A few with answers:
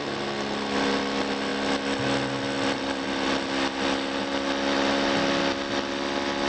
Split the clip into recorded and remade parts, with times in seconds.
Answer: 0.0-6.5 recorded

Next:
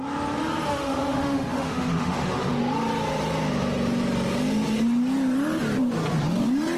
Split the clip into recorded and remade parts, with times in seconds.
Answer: 0.0-0.7 recorded; 0.7-2.6 remade; 2.6-6.8 recorded

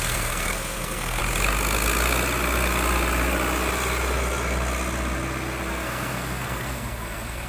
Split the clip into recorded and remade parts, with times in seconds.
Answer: 0.0-1.2 remade; 1.2-5.7 recorded; 5.7-7.5 remade

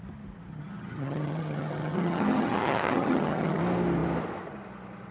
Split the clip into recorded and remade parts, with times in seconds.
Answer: 0.0-0.5 recorded; 0.5-3.6 remade; 3.6-5.1 recorded